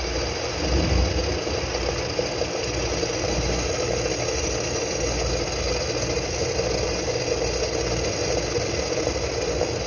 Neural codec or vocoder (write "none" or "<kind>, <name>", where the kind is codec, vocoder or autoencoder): none